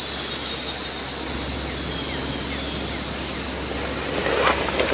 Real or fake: real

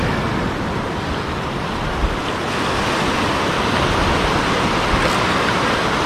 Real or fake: real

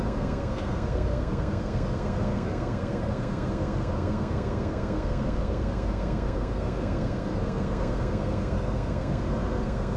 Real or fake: fake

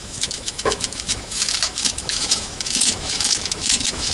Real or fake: fake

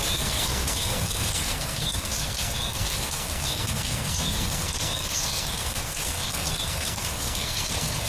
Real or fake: fake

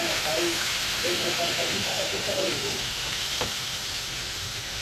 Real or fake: fake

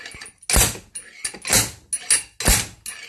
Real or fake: real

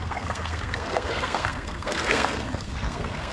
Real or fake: fake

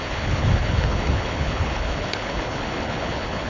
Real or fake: fake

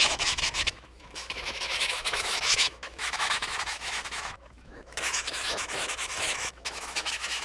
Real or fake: fake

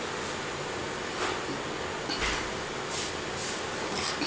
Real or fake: real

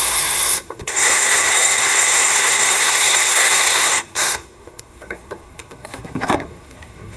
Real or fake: fake